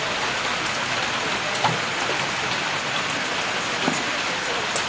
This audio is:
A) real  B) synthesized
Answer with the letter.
A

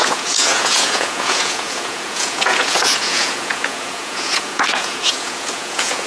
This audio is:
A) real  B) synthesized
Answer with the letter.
B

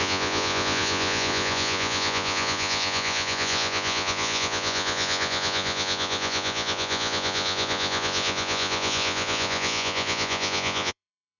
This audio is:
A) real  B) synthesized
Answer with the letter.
B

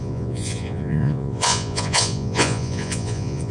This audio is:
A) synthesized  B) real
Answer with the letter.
A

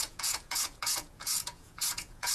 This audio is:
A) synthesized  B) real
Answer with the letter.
A